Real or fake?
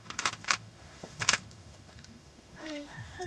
fake